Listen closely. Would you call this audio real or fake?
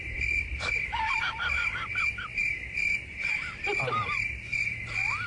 fake